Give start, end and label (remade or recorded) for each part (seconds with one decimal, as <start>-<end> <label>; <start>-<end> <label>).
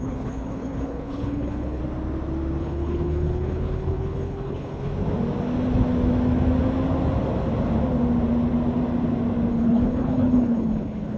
0.0-1.8 remade; 1.8-2.6 recorded; 2.6-4.9 remade; 4.9-9.5 recorded; 9.5-11.2 remade